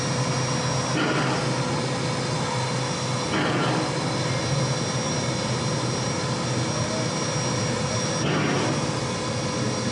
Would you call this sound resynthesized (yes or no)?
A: no